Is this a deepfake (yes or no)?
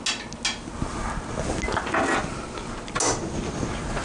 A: no